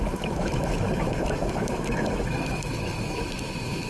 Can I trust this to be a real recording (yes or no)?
no